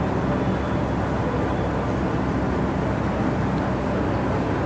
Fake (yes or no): no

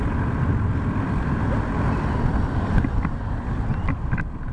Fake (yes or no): no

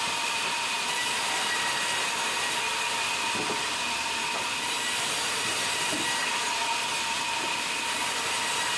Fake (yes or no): no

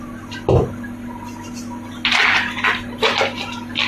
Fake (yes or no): no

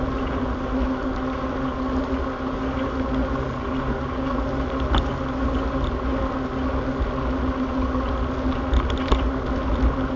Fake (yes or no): no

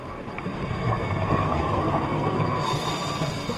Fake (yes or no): yes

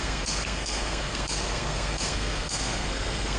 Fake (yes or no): yes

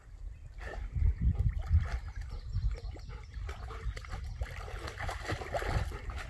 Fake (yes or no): no